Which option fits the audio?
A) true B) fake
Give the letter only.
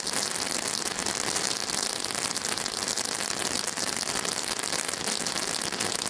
A